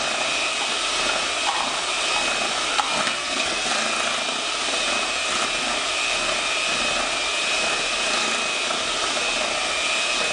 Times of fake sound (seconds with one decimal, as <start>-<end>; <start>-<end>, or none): 2.7-3.7